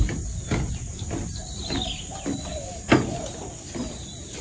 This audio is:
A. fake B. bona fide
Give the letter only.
B